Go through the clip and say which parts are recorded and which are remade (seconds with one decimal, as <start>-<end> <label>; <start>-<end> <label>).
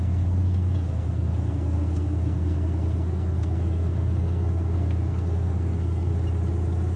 0.0-6.1 remade; 6.1-7.0 recorded